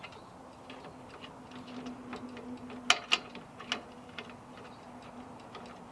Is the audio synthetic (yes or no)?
no